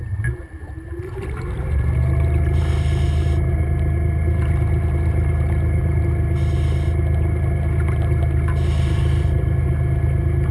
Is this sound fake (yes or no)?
yes